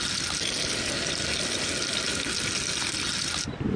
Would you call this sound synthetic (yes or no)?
no